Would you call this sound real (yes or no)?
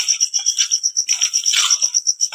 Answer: yes